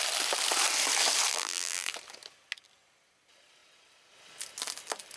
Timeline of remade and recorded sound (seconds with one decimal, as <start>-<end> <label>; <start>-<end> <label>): 0.0-1.3 recorded; 1.3-1.9 remade; 1.9-5.2 recorded